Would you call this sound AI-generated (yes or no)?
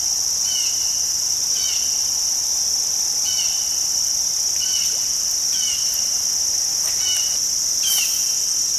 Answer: no